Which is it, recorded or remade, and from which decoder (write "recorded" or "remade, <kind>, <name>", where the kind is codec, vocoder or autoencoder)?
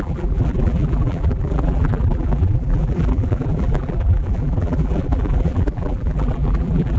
remade, vocoder, BigVGAN v2